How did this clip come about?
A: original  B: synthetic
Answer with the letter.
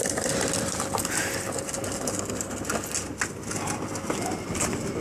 A